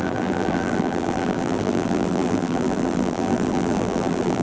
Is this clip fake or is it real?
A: fake